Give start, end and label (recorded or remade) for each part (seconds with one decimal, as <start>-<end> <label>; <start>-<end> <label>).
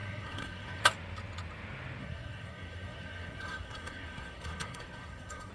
0.0-0.8 remade; 0.8-2.0 recorded; 2.0-5.5 remade